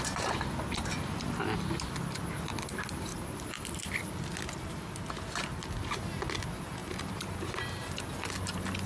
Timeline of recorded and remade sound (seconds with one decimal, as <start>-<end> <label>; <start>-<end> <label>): 0.0-3.1 recorded; 3.1-3.8 remade; 3.8-6.8 recorded; 6.8-8.0 remade; 8.0-8.9 recorded